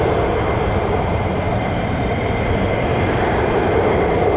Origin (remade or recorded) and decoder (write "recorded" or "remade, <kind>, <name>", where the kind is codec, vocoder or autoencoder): recorded